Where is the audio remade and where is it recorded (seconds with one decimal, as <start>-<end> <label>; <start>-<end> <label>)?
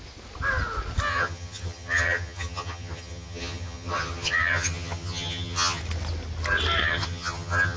0.0-1.1 recorded; 1.1-5.8 remade; 5.8-6.8 recorded; 6.8-7.8 remade